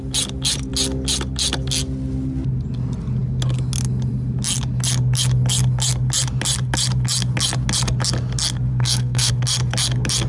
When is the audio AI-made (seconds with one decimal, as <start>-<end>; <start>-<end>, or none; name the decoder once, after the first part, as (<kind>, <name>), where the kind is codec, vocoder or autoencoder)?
8.7-9.3 (codec, SNAC)